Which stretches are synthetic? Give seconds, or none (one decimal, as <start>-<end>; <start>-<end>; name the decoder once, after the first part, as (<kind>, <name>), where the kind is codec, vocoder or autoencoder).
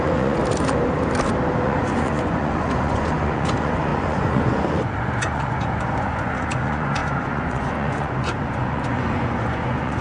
0.0-0.4 (vocoder, Vocos); 1.6-10.0